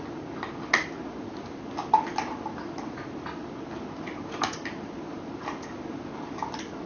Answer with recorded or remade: recorded